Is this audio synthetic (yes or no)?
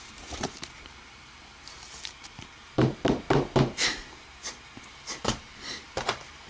yes